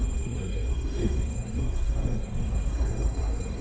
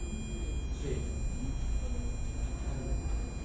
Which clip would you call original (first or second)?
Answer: second